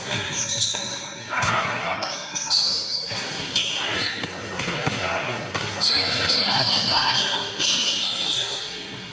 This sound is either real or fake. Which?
fake